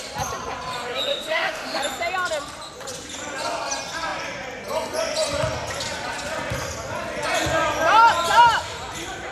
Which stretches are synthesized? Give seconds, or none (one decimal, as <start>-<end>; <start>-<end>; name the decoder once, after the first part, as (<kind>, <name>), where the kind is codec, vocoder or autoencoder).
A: 1.1-1.8 (autoencoder, DAC-VAE)